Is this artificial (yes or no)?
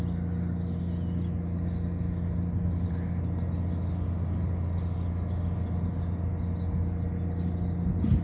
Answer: no